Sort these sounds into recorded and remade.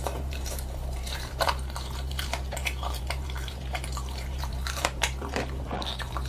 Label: remade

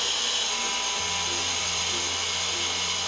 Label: recorded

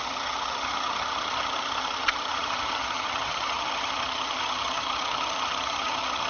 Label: remade